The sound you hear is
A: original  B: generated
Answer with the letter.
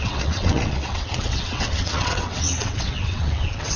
B